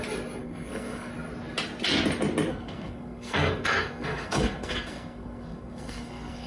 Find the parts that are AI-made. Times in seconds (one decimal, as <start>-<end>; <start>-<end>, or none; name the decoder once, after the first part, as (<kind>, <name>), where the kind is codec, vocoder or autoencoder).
0.4-1.1 (codec, SNAC); 2.5-6.5